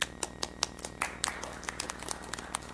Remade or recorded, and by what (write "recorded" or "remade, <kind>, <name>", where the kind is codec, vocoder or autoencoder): recorded